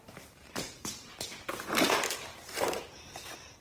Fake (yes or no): yes